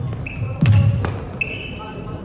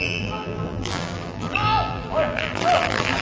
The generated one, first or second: second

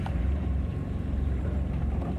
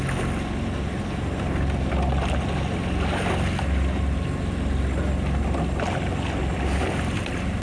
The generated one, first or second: first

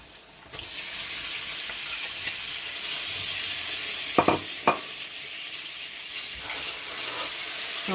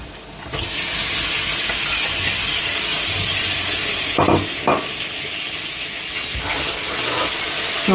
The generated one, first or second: first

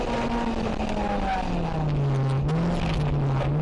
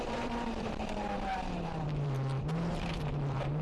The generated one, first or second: second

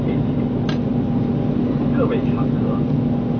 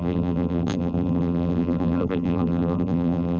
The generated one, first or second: second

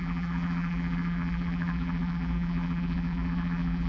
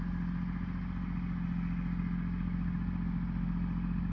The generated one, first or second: first